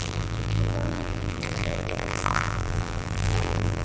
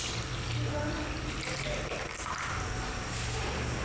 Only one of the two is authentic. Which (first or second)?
second